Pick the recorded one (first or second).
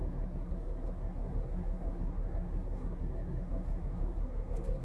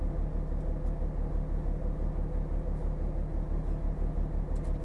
second